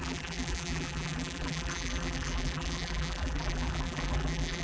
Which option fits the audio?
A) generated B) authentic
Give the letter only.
A